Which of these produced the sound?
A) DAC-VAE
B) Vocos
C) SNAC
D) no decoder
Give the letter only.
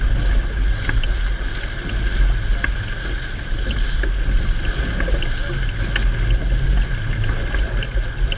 D